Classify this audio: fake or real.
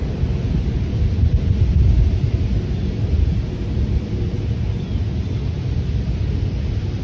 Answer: real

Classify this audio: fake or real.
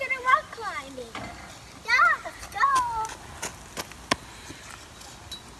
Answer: real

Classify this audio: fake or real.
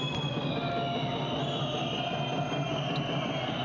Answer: real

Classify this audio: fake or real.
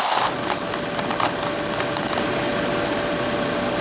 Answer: real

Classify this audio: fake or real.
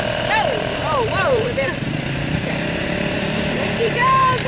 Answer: fake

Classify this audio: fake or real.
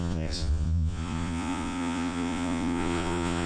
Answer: fake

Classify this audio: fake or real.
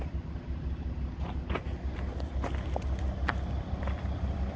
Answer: real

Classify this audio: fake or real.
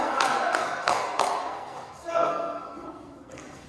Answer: fake